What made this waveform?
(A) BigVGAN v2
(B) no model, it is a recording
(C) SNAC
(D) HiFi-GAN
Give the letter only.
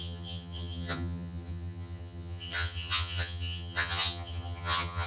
D